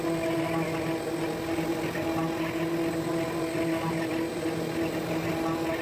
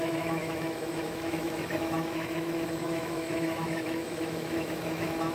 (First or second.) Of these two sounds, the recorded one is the first